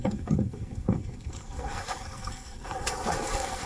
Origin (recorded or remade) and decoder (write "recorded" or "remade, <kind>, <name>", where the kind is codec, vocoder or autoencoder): remade, codec, SNAC